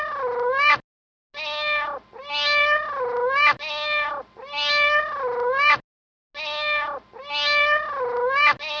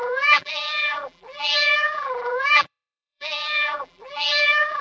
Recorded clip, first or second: first